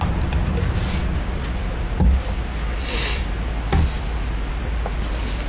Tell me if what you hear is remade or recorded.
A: recorded